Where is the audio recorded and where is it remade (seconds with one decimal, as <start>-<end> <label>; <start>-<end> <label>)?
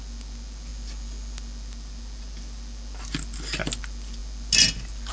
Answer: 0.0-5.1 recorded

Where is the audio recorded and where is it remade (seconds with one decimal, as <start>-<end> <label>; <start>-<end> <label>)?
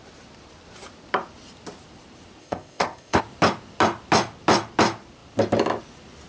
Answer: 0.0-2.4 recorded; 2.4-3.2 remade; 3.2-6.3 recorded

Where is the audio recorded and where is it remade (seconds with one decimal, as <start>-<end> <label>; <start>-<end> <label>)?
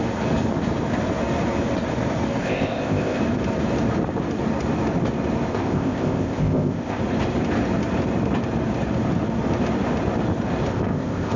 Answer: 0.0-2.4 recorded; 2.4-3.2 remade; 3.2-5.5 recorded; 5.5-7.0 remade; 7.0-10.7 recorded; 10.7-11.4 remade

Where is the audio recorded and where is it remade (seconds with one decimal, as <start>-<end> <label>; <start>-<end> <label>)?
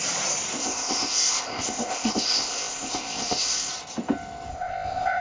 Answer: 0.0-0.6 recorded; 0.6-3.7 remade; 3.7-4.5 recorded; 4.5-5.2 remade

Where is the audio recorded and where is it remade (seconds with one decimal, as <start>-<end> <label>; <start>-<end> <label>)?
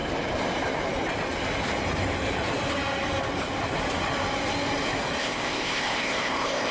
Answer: 0.0-5.2 recorded; 5.2-6.7 remade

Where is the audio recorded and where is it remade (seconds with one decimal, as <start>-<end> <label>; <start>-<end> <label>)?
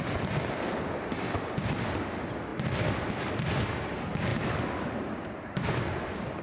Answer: 0.0-6.4 recorded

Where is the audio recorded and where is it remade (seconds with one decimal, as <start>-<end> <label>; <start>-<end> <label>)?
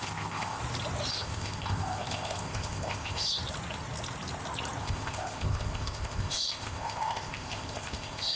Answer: 0.0-0.6 remade; 0.6-1.1 recorded; 1.1-3.4 remade; 3.4-4.8 recorded; 4.8-8.4 remade